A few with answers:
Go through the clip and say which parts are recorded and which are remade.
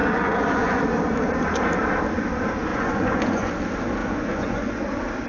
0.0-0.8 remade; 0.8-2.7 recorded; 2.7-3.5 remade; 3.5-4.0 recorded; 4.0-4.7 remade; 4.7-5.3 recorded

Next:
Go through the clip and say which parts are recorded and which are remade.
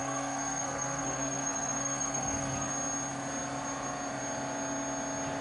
0.0-2.7 remade; 2.7-5.4 recorded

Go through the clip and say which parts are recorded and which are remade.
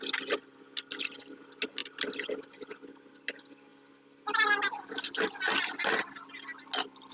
0.0-7.1 recorded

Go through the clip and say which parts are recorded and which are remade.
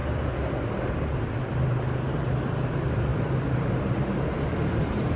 0.0-1.4 recorded; 1.4-5.2 remade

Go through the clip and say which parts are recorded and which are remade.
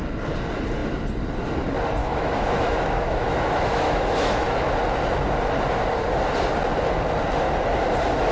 0.0-2.0 recorded; 2.0-4.7 remade; 4.7-8.3 recorded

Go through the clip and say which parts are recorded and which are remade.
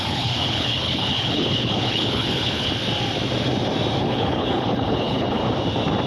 0.0-2.7 remade; 2.7-4.0 recorded; 4.0-5.4 remade; 5.4-6.1 recorded